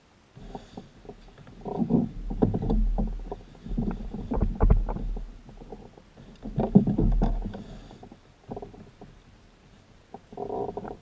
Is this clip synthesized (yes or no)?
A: no